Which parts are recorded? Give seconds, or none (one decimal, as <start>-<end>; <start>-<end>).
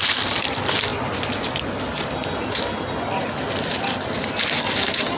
0.0-5.2